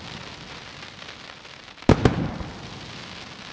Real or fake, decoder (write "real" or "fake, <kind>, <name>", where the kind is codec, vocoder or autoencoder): real